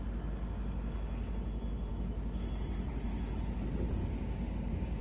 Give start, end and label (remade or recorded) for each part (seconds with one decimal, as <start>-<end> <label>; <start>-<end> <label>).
0.0-4.0 recorded; 4.0-5.0 remade